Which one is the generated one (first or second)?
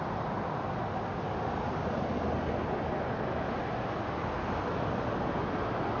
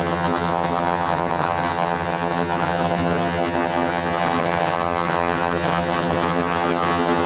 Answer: second